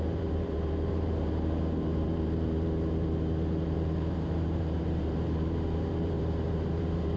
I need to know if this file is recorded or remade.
remade